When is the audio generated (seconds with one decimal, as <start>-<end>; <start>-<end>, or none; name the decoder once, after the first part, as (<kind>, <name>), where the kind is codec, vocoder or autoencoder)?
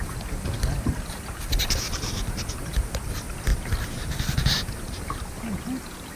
3.5-5.3 (vocoder, BigVGAN v2)